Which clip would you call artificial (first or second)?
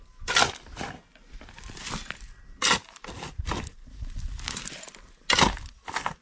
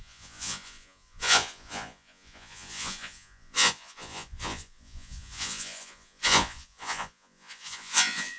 second